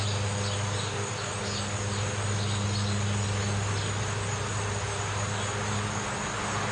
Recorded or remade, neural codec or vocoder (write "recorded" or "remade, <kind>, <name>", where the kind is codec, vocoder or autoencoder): recorded